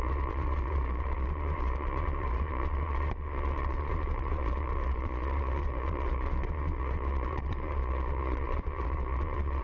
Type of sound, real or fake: fake